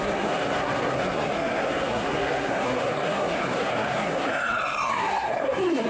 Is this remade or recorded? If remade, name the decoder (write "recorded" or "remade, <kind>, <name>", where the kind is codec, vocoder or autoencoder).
remade, codec, SNAC